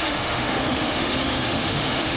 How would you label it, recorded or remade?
remade